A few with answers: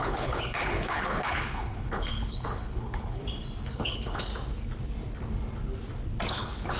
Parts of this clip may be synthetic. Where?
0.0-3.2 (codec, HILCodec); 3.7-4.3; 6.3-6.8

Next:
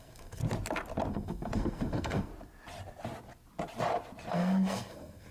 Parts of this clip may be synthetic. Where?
0.0-0.4 (codec, SNAC); 1.1-2.3; 4.3-5.3

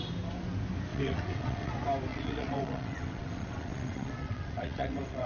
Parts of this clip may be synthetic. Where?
0.9-1.7 (vocoder, WaveNeXt); 2.1-5.3

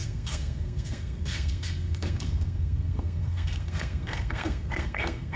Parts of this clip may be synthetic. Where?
0.0-5.4 (codec, SNAC)

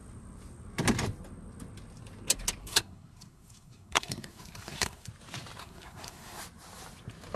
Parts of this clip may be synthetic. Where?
2.6-5.1 (codec, SNAC); 5.6-6.4

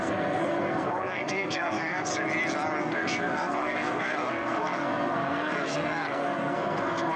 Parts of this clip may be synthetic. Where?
0.0-2.1 (codec, SNAC); 2.8-7.2